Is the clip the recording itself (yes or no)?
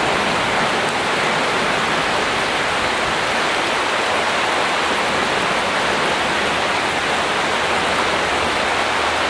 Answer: yes